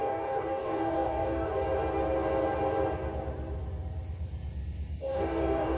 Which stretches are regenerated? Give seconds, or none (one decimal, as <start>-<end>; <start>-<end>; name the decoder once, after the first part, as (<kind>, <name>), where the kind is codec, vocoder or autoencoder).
0.0-1.5 (codec, DAC); 5.0-5.8